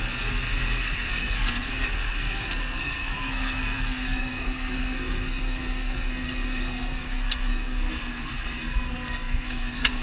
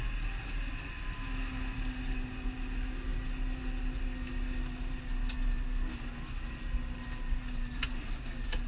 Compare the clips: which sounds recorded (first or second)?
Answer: second